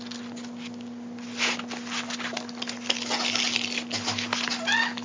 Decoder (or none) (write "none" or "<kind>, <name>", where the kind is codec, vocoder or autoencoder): none